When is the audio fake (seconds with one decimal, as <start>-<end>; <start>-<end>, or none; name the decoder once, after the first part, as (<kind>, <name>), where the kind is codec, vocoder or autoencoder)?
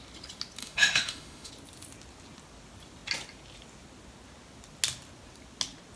0.6-1.5 (autoencoder, DAC-VAE)